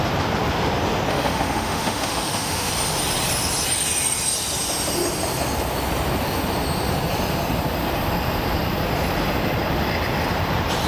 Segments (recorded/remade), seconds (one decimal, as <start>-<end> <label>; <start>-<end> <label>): 0.0-1.1 recorded; 1.1-2.7 remade; 2.7-10.9 recorded